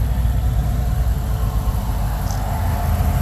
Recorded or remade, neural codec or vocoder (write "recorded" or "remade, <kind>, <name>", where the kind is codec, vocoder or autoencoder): recorded